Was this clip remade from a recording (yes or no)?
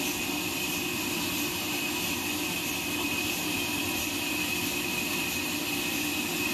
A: no